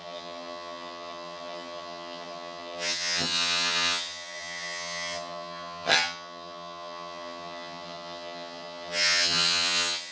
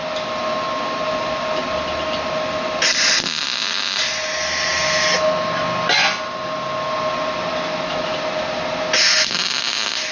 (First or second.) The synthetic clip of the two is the first